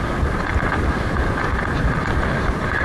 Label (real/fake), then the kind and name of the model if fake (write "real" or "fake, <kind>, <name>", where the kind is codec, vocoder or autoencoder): real